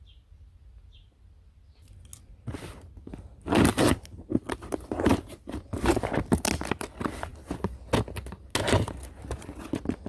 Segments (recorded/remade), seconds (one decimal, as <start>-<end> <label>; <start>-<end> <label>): 0.0-10.1 recorded